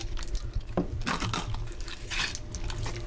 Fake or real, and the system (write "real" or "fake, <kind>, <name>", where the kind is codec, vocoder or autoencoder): real